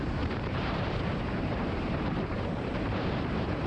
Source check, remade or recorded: remade